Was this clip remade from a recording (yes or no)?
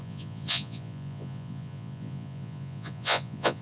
yes